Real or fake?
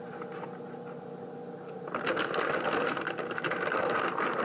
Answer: real